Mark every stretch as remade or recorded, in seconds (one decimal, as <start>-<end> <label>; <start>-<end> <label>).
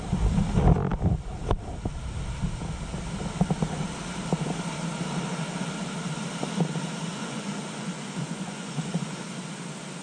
0.0-7.1 recorded; 7.1-9.1 remade; 9.1-10.0 recorded